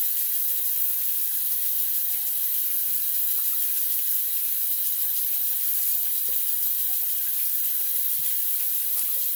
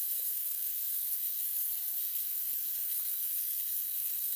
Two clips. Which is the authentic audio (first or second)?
first